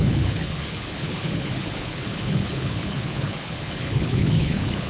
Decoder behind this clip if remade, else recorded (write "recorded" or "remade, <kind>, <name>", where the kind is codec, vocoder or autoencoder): remade, codec, HILCodec